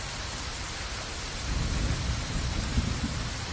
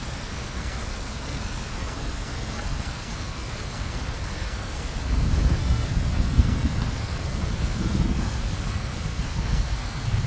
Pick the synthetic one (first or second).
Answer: second